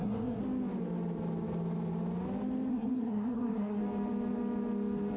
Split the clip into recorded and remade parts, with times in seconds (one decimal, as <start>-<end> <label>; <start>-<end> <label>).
0.0-0.4 remade; 0.4-2.7 recorded; 2.7-3.8 remade; 3.8-5.2 recorded